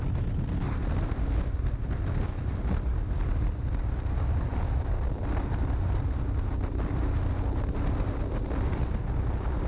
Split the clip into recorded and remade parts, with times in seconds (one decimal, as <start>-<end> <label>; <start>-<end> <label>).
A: 0.0-9.7 recorded